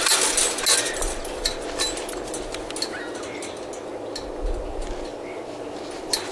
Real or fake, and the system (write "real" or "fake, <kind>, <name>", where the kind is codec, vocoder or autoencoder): real